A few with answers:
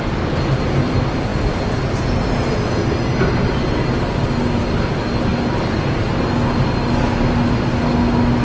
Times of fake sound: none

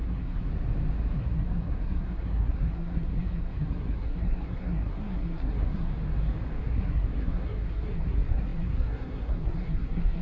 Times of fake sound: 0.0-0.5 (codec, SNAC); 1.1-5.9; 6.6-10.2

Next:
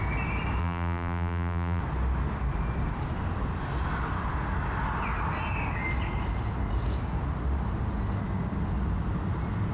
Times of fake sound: 0.6-1.8 (vocoder, BigVGAN v2)

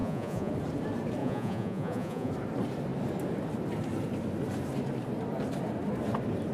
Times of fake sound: 0.0-0.5 (vocoder, Vocos); 1.2-2.3

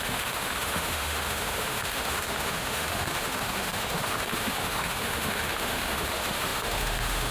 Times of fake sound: 0.0-7.3 (autoencoder, DAC-VAE)